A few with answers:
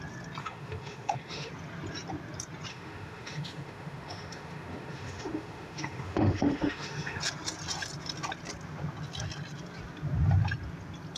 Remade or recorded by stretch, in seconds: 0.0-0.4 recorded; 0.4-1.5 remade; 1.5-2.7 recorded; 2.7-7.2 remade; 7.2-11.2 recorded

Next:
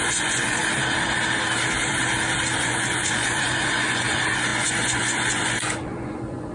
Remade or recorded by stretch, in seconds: 0.0-0.6 remade; 0.6-2.6 recorded; 2.6-6.5 remade